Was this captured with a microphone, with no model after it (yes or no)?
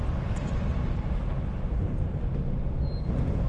yes